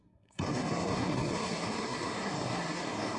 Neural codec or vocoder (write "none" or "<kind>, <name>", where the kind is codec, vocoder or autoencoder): codec, SNAC